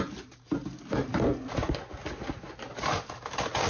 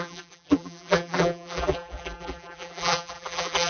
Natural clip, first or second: first